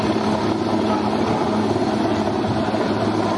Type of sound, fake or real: real